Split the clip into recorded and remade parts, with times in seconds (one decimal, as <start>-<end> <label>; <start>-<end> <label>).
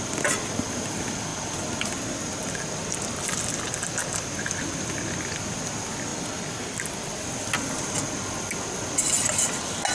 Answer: 0.0-9.9 recorded